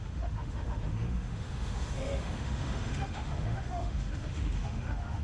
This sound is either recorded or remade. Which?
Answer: remade